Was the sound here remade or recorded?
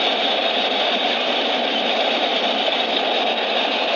recorded